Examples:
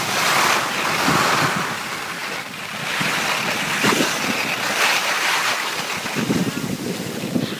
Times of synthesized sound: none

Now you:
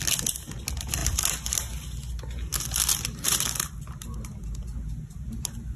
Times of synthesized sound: none

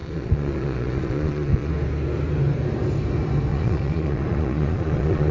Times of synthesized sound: 0.0-1.7; 3.5-5.3